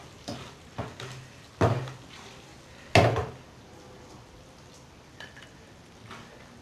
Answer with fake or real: real